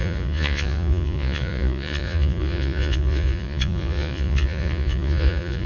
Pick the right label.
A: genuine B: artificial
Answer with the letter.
B